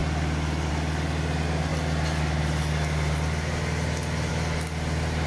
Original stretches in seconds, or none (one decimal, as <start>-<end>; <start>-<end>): 0.0-5.3